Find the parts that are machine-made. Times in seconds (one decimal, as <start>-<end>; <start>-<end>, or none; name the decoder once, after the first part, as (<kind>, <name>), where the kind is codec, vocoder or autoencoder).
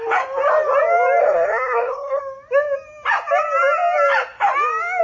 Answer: 1.2-2.2 (codec, SNAC)